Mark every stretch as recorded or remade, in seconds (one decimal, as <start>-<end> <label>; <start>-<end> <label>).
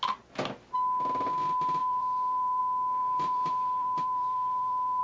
0.0-1.8 recorded; 1.8-2.6 remade; 2.6-3.0 recorded; 3.0-5.0 remade